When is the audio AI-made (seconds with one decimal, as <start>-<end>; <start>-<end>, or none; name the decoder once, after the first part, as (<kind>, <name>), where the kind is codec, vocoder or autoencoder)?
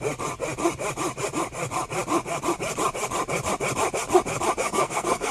4.6-5.3 (codec, SNAC)